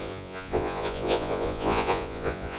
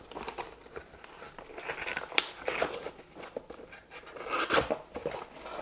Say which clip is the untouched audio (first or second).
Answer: second